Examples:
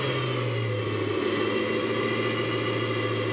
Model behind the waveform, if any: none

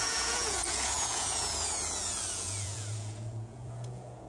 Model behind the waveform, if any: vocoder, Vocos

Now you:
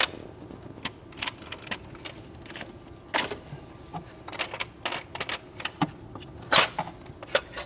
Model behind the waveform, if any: none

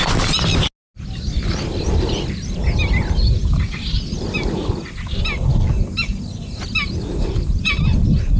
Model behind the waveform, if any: none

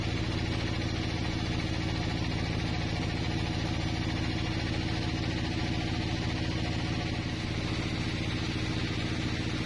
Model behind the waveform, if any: none